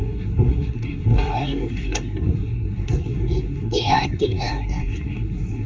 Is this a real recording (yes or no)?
no